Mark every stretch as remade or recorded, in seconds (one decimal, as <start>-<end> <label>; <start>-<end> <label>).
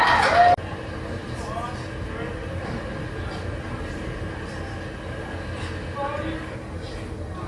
0.0-7.5 recorded